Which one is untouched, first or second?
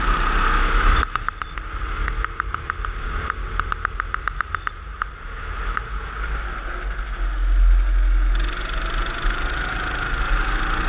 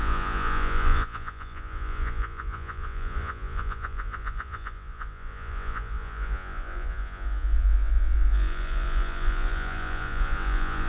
first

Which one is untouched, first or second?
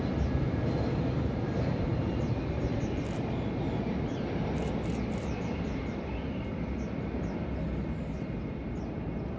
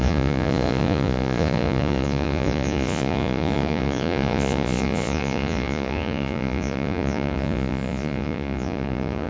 first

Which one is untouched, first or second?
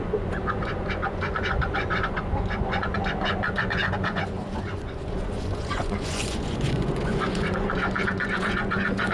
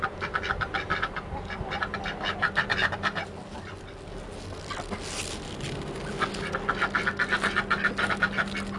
second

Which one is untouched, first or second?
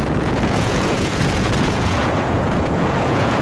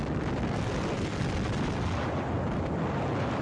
second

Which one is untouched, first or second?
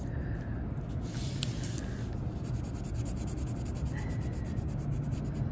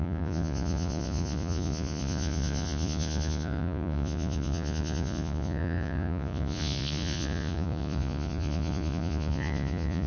first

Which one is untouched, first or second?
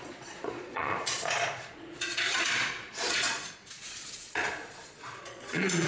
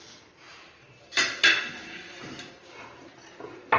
second